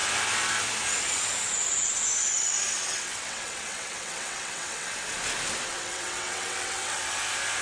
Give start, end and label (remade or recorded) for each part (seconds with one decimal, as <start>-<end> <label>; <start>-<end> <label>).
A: 0.0-2.9 recorded; 2.9-4.9 remade; 4.9-5.7 recorded; 5.7-7.0 remade; 7.0-7.6 recorded